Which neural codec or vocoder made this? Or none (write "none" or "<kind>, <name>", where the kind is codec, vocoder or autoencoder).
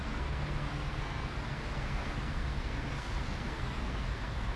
codec, SNAC